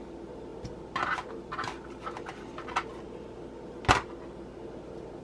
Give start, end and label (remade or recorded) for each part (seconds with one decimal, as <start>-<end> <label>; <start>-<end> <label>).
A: 0.0-5.2 recorded